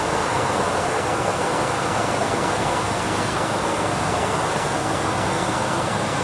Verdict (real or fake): fake